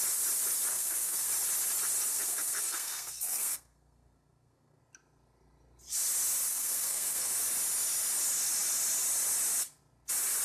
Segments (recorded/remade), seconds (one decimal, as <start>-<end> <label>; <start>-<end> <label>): 0.0-0.7 recorded; 0.7-1.3 remade; 1.3-2.1 recorded; 2.1-4.8 remade; 4.8-6.5 recorded; 6.5-7.3 remade; 7.3-10.4 recorded